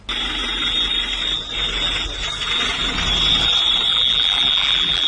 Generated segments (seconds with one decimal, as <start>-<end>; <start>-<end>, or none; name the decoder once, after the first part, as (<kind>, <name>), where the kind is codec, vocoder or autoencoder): 3.9-5.1 (vocoder, BigVGAN v2)